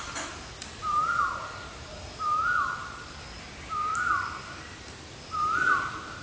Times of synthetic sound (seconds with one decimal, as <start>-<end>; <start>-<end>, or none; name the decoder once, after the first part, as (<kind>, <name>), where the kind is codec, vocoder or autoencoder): 0.6-1.3 (vocoder, BigVGAN v2); 3.9-5.2